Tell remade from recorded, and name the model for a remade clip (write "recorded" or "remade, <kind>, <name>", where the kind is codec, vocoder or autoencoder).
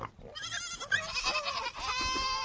recorded